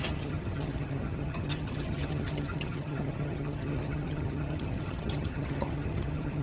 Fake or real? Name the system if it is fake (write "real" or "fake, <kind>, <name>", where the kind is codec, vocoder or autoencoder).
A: fake, vocoder, HiFi-GAN